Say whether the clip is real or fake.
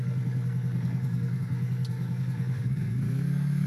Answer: fake